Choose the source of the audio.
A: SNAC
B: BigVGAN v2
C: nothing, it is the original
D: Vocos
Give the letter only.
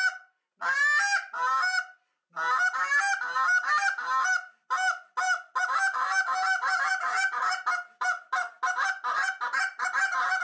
C